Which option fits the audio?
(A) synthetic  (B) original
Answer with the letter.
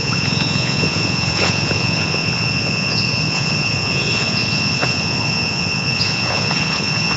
A